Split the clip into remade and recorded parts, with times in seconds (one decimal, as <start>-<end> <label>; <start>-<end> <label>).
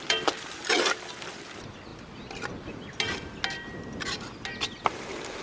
0.0-5.4 recorded